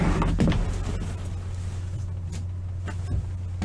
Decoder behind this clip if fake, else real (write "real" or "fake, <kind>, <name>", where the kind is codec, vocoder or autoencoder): real